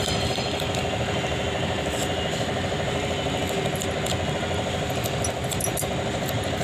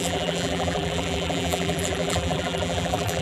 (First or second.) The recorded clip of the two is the first